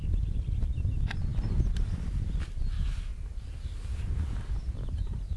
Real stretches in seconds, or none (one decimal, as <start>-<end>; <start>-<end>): 0.0-5.4

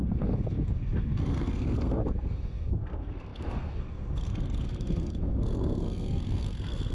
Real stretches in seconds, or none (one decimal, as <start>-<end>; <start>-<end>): none

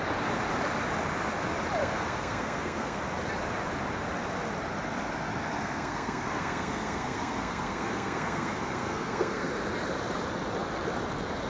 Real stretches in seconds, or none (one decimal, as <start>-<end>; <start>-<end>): 0.0-1.8; 3.0-5.6; 9.5-11.5

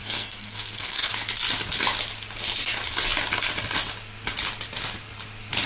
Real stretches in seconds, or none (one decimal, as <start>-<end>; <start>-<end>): 1.1-5.7